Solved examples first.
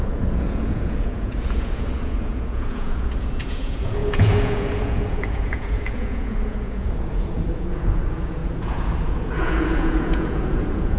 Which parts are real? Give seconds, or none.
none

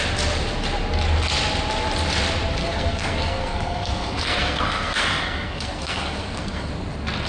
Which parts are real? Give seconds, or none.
0.0-2.6; 6.7-7.3

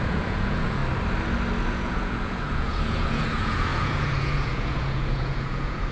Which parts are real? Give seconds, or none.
0.8-1.7

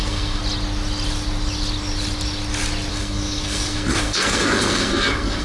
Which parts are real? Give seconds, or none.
0.4-2.9